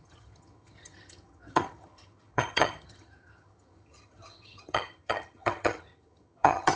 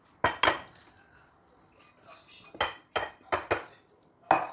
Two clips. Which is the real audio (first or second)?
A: second